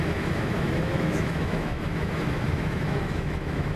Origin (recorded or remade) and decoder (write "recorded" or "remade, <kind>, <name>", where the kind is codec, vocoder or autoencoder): remade, autoencoder, DAC-VAE